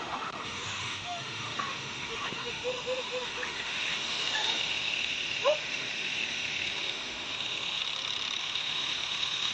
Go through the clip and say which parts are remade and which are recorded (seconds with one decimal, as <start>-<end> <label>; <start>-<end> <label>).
0.0-7.8 remade; 7.8-8.4 recorded; 8.4-9.5 remade